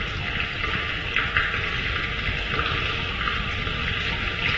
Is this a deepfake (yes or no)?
no